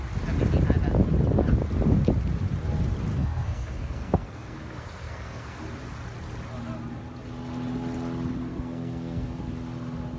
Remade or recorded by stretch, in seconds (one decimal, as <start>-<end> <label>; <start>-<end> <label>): 0.0-3.1 recorded; 3.1-5.6 remade; 5.6-8.5 recorded; 8.5-9.4 remade; 9.4-10.2 recorded